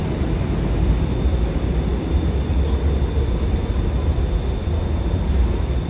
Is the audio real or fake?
real